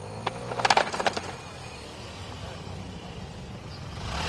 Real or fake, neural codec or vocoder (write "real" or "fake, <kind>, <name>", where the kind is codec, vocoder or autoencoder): real